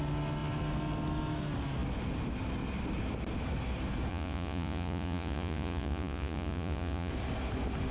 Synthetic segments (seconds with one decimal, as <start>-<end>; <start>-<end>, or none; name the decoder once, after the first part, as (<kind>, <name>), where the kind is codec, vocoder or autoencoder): 4.1-7.1 (vocoder, Vocos)